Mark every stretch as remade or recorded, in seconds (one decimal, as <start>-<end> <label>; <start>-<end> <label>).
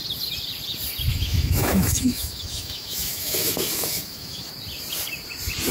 0.0-1.1 recorded; 1.1-4.5 remade; 4.5-5.7 recorded